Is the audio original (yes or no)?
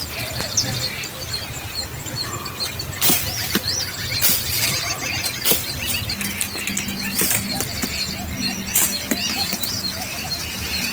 yes